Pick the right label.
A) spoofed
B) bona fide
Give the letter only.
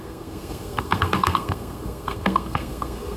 A